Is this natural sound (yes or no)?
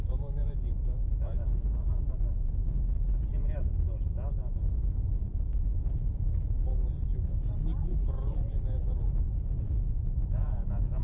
no